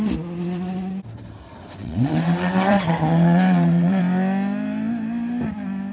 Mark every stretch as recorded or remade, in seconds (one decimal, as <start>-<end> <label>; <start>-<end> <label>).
0.0-1.8 recorded; 1.8-4.0 remade; 4.0-5.9 recorded